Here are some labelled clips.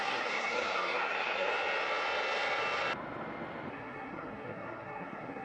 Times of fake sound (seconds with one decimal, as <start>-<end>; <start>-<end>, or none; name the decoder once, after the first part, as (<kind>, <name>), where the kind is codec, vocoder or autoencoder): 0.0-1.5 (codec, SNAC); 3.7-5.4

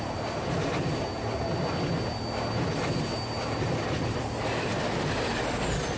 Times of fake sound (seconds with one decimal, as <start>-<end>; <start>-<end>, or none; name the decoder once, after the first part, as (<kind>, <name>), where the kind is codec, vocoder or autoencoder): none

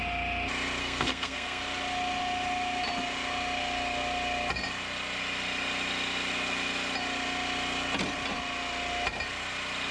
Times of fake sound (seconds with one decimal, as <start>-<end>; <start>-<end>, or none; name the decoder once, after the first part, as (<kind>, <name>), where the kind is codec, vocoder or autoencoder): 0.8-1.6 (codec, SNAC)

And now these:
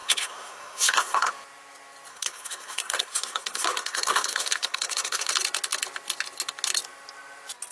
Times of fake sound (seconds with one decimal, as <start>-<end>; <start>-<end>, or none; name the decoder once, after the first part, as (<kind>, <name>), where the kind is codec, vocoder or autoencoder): 0.0-1.3 (codec, SNAC); 2.1-5.3

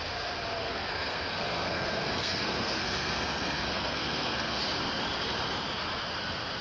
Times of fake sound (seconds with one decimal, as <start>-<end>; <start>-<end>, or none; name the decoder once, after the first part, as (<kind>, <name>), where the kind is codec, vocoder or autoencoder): 0.6-4.6 (codec, SNAC)

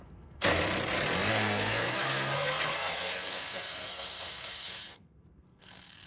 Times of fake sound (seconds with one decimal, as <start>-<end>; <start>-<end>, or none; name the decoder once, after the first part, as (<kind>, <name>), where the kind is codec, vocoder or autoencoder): 0.0-0.5 (codec, SNAC); 1.3-6.1